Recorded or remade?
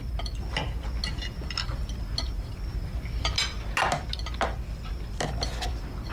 recorded